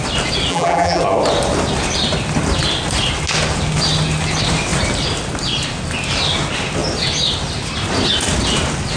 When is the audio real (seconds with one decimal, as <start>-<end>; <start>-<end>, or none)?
0.0-0.5; 1.0-9.0